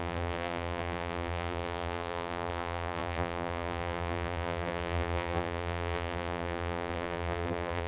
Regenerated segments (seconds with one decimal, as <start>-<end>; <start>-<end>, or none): 0.0-7.9